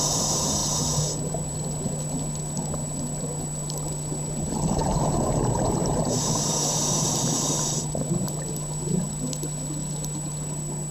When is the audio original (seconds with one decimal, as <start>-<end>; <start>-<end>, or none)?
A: 0.0-10.9